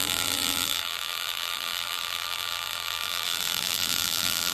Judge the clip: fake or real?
fake